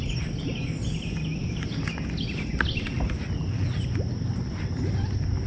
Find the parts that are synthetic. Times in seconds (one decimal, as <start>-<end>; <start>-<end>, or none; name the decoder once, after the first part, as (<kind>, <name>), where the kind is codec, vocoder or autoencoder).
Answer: 1.4-2.0 (vocoder, Vocos)

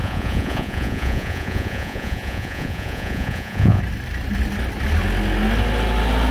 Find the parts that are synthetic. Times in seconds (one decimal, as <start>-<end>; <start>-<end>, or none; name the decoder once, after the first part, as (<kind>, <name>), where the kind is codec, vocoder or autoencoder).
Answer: 0.0-3.8 (vocoder, Vocos)

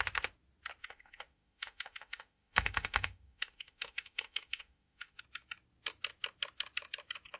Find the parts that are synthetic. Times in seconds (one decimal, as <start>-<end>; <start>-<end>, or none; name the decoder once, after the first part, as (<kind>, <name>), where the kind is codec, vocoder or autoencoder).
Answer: 0.8-5.2 (autoencoder, DAC-VAE)

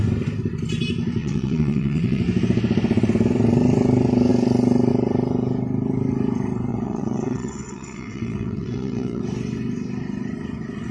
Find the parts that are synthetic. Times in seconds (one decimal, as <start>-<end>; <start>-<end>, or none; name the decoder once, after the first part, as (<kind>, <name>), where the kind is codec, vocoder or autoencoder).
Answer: 1.2-2.2 (vocoder, WaveNeXt); 6.7-9.2

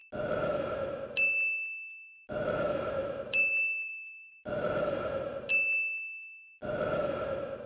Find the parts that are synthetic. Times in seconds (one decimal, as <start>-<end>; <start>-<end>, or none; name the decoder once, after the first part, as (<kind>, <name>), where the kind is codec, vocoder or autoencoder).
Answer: 3.0-5.5 (vocoder, BigVGAN v2)

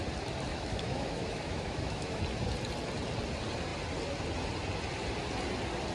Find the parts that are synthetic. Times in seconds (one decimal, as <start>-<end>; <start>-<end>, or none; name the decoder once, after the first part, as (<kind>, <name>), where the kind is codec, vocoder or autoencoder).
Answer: 0.5-2.2 (autoencoder, DAC-VAE)

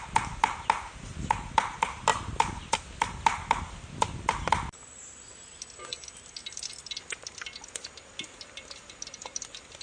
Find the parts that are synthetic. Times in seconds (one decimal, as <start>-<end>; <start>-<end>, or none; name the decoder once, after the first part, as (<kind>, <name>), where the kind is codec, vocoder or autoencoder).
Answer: none

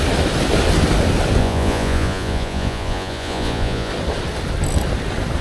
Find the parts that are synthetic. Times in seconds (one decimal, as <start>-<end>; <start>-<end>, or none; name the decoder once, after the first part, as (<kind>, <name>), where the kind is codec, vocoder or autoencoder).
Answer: 1.4-3.9 (vocoder, Vocos)